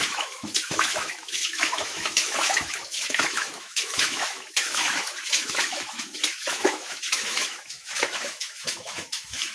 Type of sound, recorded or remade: remade